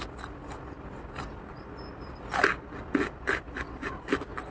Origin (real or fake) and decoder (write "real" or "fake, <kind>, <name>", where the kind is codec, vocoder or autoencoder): real